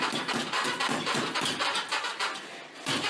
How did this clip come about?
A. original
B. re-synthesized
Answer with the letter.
A